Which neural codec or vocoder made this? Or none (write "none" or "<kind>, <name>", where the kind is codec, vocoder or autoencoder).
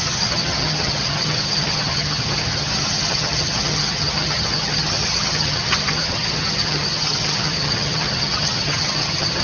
vocoder, HiFi-GAN